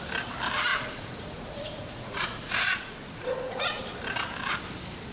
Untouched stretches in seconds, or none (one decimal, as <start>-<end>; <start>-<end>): 0.0-0.7; 3.8-5.1